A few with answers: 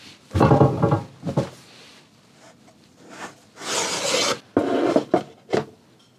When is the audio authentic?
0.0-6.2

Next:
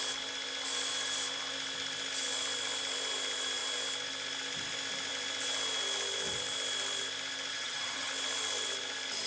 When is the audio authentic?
0.0-7.5; 8.1-9.3

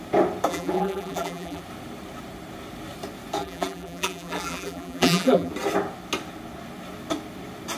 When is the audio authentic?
0.0-0.5; 1.6-3.4; 5.5-7.8

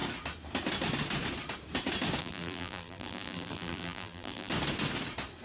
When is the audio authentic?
0.0-2.2; 4.5-5.4